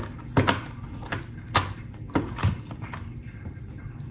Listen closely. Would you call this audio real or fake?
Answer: real